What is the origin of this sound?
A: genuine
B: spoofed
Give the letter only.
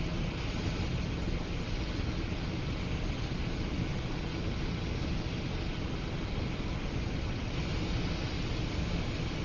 A